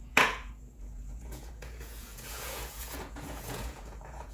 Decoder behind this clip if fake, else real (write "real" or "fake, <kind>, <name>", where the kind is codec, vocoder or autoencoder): fake, vocoder, Vocos